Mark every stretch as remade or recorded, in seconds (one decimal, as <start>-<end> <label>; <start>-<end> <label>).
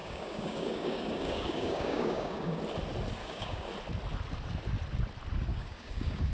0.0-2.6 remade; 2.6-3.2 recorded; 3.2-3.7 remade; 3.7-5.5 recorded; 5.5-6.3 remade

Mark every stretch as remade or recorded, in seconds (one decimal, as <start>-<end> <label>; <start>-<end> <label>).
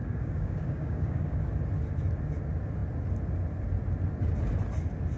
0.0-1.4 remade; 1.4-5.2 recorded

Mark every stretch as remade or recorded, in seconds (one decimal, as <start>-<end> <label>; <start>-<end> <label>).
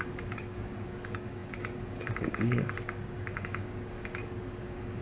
0.0-5.0 remade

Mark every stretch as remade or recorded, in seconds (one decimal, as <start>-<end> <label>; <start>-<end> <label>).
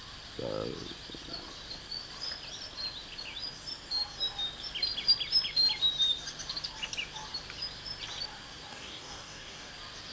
0.0-8.7 recorded; 8.7-9.7 remade; 9.7-10.1 recorded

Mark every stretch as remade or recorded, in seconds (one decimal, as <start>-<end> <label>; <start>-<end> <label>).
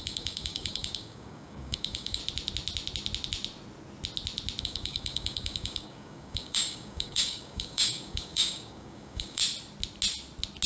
0.0-2.2 remade; 2.2-4.6 recorded; 4.6-9.4 remade; 9.4-10.7 recorded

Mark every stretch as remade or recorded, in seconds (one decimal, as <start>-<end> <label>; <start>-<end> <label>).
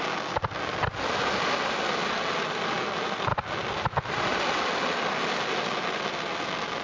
0.0-6.8 recorded